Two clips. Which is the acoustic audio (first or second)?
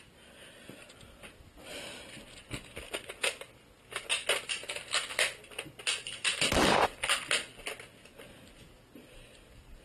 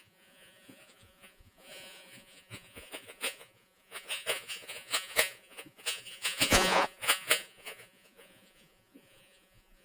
first